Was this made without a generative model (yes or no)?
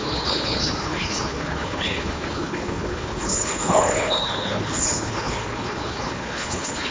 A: no